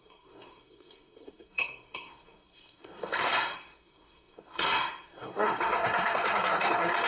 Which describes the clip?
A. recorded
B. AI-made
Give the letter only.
B